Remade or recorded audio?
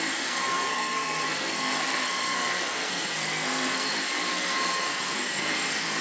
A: remade